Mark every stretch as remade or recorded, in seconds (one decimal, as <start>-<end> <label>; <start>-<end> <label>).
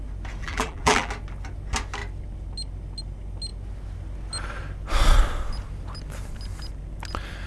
0.0-0.4 recorded; 0.4-1.1 remade; 1.1-7.5 recorded